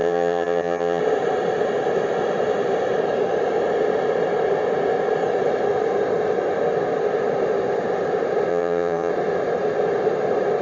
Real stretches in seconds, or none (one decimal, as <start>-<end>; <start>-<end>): 1.0-8.5; 9.1-10.6

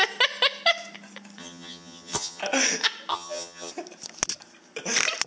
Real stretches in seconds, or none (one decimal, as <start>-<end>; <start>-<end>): 0.0-1.4; 2.4-3.1; 3.7-5.3

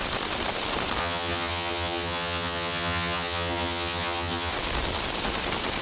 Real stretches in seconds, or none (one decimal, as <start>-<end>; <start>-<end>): 0.0-1.0; 4.5-5.8

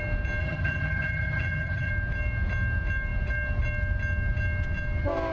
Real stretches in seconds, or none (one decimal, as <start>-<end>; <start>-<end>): 0.0-0.4; 1.9-5.3

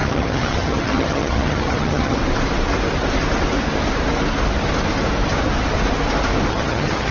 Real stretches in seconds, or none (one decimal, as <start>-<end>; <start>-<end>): 2.2-6.5

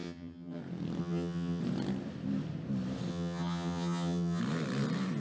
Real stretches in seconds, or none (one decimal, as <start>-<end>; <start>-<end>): 0.6-1.0; 1.6-3.1; 4.4-5.2

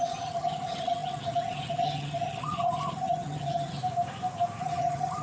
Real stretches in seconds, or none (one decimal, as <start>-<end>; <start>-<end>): 3.8-4.6

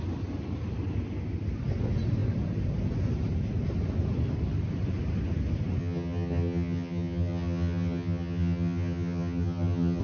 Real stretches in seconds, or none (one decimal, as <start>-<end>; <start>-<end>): 0.0-5.8